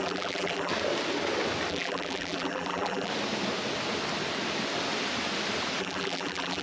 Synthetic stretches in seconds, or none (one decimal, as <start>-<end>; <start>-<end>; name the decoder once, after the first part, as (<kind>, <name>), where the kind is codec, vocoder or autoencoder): 0.0-0.7 (vocoder, BigVGAN v2); 1.7-3.1; 5.8-6.6

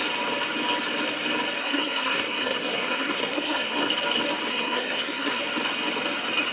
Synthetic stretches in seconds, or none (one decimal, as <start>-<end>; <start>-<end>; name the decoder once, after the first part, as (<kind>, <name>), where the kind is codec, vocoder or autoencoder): 1.6-3.9 (codec, SNAC); 4.5-5.4